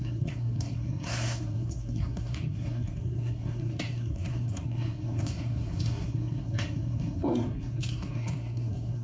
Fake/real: fake